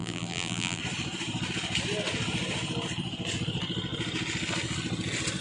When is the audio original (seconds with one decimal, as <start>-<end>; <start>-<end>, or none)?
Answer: 0.8-5.4